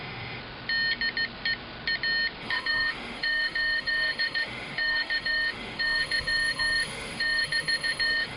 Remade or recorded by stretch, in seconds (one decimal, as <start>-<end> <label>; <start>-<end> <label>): 0.0-0.4 remade; 0.4-2.4 recorded; 2.4-8.4 remade